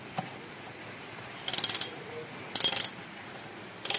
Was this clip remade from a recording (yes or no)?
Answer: no